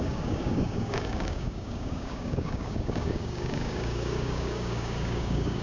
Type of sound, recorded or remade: remade